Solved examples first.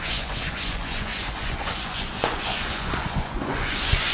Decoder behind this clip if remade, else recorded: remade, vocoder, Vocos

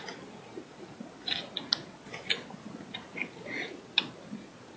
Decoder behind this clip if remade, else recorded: recorded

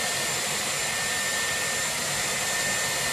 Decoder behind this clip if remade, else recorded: recorded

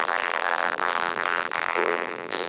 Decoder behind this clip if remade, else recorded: remade, vocoder, BigVGAN v2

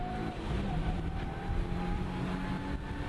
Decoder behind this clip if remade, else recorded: remade, vocoder, BigVGAN v2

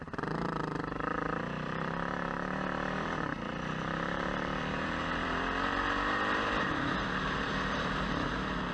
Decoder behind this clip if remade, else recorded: remade, vocoder, BigVGAN v2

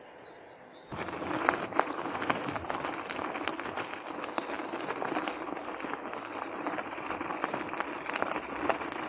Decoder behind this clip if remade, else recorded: recorded